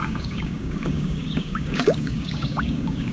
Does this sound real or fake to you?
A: fake